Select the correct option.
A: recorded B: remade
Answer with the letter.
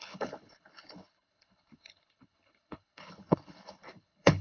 B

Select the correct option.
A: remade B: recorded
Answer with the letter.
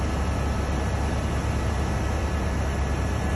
B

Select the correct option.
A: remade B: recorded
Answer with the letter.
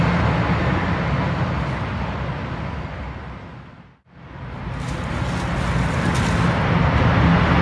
B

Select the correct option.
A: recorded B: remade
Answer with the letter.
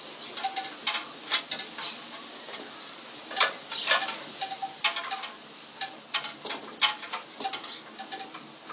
A